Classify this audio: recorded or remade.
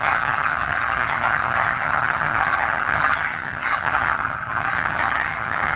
remade